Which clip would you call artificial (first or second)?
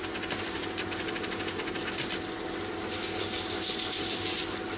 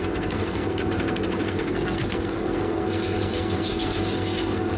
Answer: second